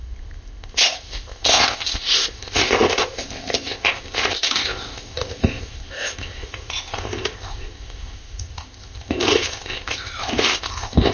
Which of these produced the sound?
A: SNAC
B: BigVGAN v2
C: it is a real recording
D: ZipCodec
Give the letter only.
D